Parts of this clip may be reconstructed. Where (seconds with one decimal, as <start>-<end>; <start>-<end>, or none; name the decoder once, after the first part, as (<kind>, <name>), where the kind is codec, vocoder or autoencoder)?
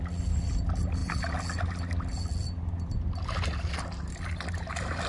none